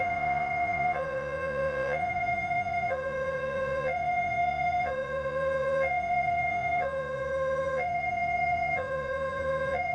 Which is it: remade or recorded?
remade